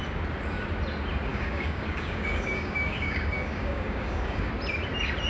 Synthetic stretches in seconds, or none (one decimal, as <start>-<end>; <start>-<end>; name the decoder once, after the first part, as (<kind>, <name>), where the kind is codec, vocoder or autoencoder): 1.3-4.5 (codec, DAC)